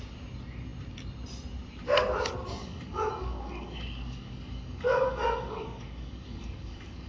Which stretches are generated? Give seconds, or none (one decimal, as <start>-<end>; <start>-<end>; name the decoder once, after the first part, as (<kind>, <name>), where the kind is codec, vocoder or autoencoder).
2.6-7.1 (codec, DAC)